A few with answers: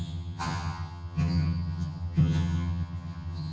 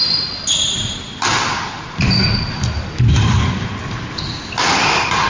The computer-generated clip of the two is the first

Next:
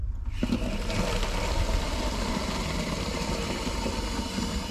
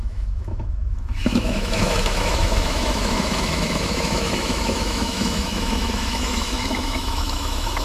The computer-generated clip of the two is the second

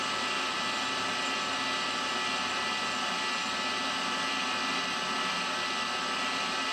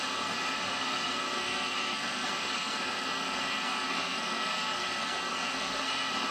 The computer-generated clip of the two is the second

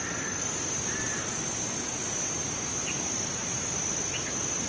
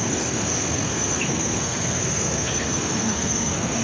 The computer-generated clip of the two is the second